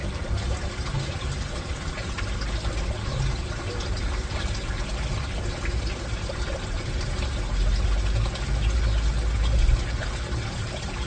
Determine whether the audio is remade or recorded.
recorded